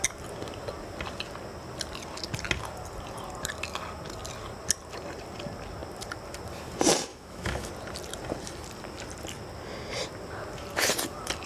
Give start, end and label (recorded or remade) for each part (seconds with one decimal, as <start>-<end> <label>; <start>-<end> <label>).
0.0-7.1 recorded; 7.1-7.7 remade; 7.7-11.5 recorded